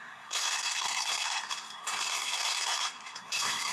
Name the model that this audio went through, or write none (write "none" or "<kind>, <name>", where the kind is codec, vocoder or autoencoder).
codec, SNAC